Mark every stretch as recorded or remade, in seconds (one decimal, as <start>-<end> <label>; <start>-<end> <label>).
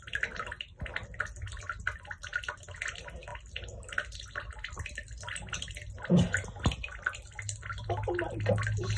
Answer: 0.0-9.0 recorded